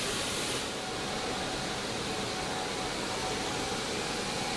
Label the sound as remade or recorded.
recorded